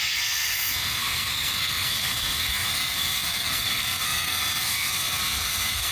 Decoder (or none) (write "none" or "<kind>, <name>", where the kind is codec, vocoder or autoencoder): codec, SNAC